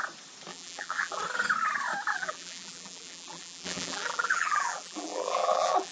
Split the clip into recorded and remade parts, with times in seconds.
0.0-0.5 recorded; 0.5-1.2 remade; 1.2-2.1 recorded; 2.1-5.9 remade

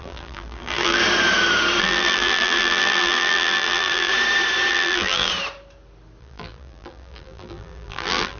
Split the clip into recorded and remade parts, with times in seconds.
0.0-1.0 remade; 1.0-1.8 recorded; 1.8-4.1 remade; 4.1-4.7 recorded; 4.7-5.3 remade; 5.3-6.2 recorded; 6.2-8.4 remade